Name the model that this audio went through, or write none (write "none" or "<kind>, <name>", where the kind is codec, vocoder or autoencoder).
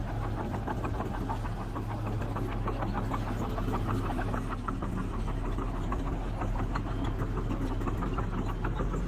none